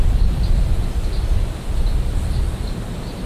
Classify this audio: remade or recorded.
recorded